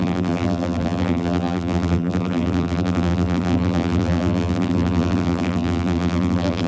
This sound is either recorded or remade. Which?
remade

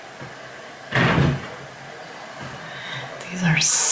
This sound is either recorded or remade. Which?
recorded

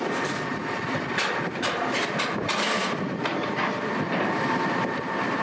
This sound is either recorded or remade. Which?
remade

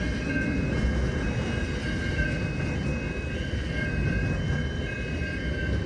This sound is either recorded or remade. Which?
recorded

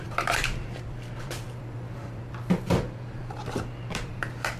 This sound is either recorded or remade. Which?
remade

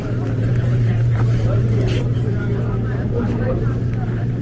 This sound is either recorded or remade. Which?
remade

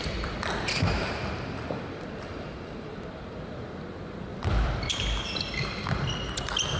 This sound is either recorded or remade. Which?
remade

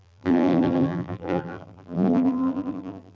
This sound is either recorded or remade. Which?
remade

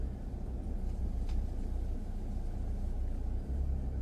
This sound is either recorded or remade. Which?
recorded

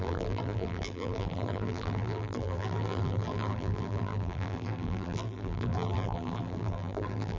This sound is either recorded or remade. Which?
remade